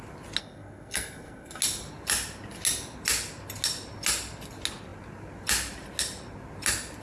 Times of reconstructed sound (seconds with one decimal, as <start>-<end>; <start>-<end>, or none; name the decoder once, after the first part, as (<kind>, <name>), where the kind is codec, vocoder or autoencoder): 0.4-1.6 (codec, SNAC)